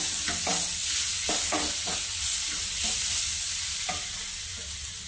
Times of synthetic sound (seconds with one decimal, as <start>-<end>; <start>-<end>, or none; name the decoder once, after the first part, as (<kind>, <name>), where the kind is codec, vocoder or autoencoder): none